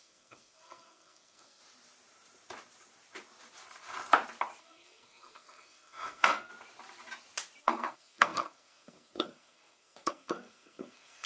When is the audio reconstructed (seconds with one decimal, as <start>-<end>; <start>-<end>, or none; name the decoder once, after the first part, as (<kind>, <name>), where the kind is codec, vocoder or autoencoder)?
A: 0.0-1.6 (codec, SNAC); 4.6-6.5; 7.6-11.3